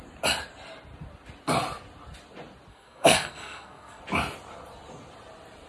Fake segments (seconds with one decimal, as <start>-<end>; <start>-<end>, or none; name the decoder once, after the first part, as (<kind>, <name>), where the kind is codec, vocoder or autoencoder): 2.7-4.0 (codec, SNAC)